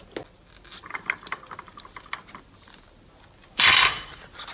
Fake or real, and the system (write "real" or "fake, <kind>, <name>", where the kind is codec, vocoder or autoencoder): real